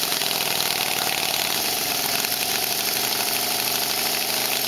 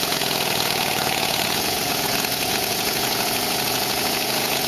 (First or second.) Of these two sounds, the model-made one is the second